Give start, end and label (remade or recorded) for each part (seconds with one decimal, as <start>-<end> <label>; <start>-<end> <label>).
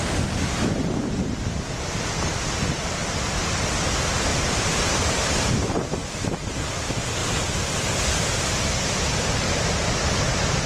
0.0-4.3 recorded; 4.3-5.6 remade; 5.6-7.2 recorded; 7.2-9.6 remade; 9.6-10.7 recorded